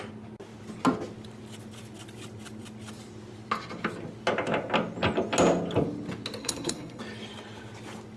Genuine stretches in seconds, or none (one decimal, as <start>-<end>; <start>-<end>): 0.0-6.4; 7.0-8.2